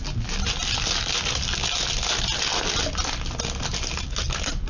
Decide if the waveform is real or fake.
real